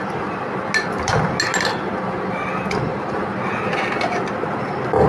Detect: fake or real real